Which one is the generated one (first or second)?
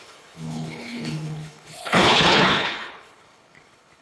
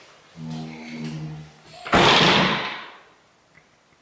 first